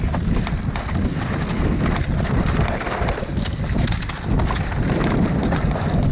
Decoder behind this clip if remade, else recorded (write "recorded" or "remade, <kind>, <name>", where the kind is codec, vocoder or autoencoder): recorded